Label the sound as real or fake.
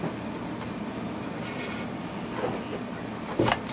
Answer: real